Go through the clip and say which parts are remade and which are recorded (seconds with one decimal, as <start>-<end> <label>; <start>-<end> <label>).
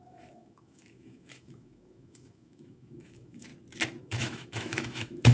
0.0-3.5 remade; 3.5-4.0 recorded; 4.0-5.3 remade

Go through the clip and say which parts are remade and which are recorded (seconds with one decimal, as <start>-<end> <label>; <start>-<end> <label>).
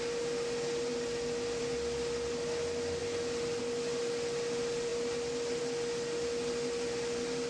0.0-7.5 recorded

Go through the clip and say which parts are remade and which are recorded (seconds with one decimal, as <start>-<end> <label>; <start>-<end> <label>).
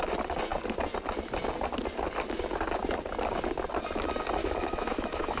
0.0-4.4 recorded; 4.4-5.4 remade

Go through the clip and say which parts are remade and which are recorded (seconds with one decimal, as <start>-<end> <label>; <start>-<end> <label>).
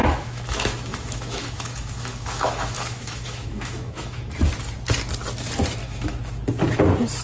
0.0-4.3 remade; 4.3-5.8 recorded; 5.8-6.4 remade; 6.4-7.2 recorded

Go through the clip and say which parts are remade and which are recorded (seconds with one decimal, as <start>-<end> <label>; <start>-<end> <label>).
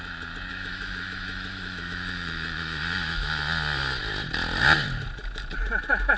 0.0-0.5 recorded; 0.5-3.3 remade; 3.3-6.2 recorded